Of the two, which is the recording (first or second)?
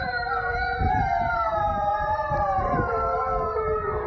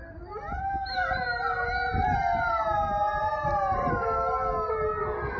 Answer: second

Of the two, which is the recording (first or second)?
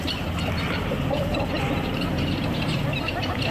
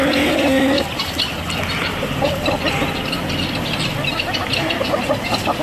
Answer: second